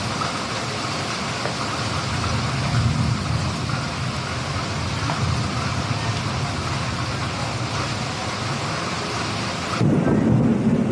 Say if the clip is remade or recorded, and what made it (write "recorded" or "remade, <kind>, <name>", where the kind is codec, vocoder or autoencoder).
recorded